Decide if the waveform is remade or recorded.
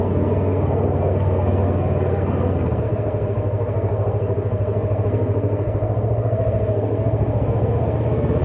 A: remade